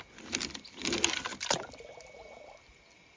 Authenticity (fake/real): real